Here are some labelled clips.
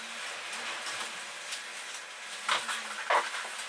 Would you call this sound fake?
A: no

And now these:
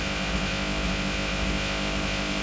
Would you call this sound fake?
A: yes